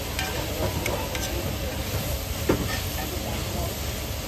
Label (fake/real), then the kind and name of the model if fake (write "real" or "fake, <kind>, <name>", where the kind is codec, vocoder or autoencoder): real